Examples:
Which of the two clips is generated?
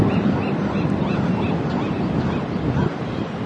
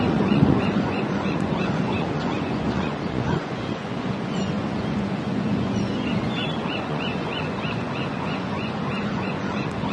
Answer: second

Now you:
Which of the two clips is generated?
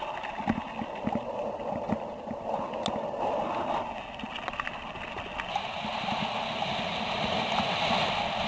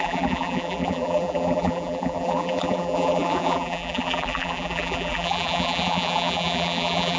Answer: second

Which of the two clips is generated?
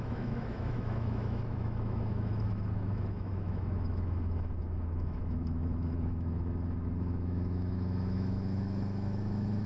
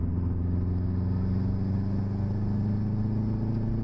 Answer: first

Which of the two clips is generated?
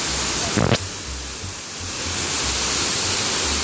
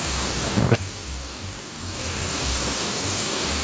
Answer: second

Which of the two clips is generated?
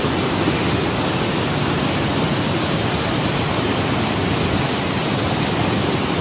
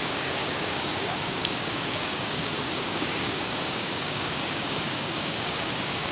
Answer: second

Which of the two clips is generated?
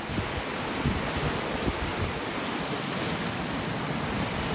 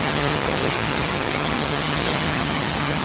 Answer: second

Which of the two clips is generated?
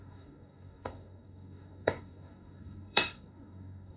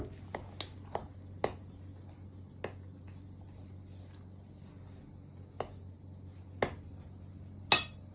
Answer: first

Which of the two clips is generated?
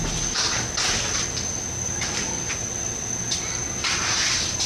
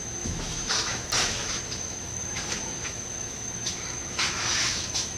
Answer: second